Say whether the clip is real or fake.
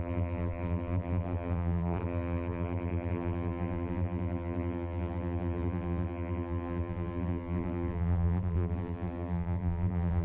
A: fake